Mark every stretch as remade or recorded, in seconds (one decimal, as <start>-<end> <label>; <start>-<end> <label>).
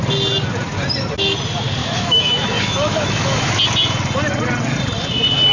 0.0-1.8 recorded; 1.8-3.5 remade; 3.5-5.5 recorded